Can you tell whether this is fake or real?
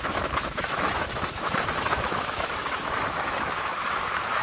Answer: fake